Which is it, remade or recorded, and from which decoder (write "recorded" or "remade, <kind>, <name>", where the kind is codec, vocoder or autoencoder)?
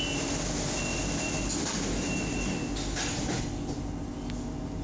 recorded